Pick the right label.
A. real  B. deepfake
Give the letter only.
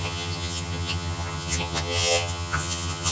B